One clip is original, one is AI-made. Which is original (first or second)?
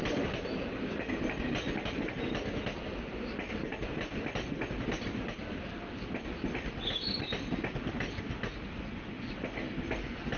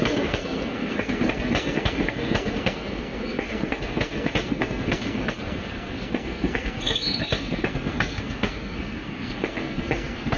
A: first